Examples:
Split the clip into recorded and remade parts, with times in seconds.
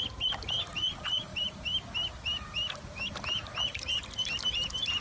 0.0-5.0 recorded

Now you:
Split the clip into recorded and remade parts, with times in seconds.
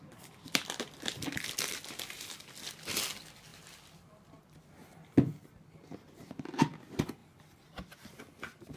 0.0-8.8 recorded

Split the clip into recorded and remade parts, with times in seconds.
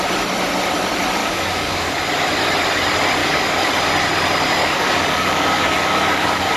0.0-1.2 recorded; 1.2-1.9 remade; 1.9-3.2 recorded; 3.2-3.7 remade; 3.7-4.6 recorded; 4.6-6.6 remade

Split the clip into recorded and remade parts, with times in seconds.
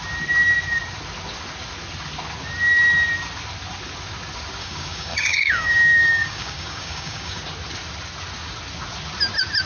0.0-4.6 recorded; 4.6-7.4 remade; 7.4-9.7 recorded